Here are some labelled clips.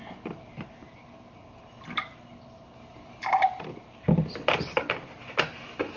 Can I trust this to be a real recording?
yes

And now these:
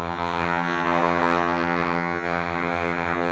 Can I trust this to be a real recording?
no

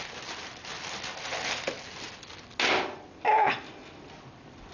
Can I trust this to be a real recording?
yes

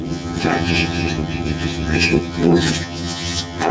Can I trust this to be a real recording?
no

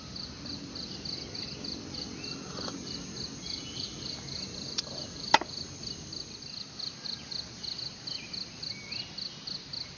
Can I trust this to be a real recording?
yes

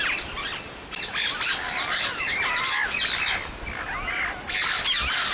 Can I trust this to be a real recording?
yes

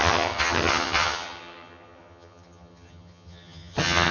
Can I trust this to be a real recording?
no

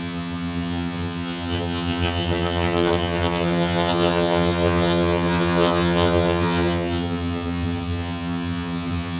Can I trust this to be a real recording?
no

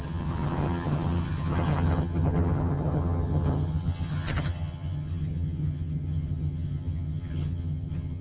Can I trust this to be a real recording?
no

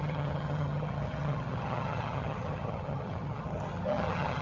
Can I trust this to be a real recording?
no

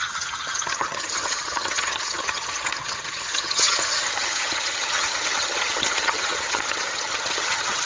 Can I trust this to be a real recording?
no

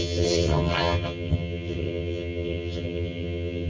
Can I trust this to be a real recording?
no